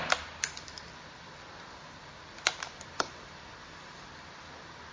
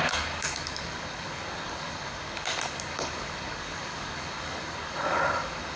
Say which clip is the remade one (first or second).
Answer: second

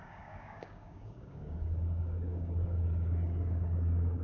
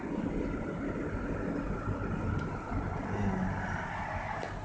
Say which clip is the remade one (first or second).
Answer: first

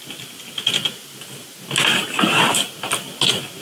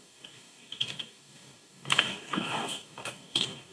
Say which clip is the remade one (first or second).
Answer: second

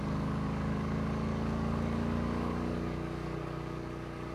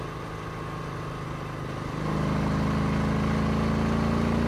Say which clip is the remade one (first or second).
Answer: first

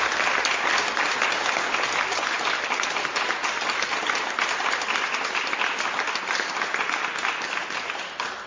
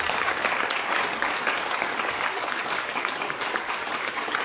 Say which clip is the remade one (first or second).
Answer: second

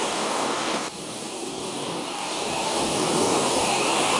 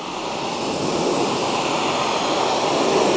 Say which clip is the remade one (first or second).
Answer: first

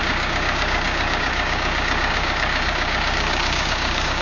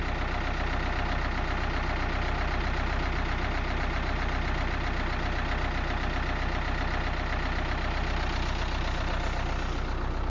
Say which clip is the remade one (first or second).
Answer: first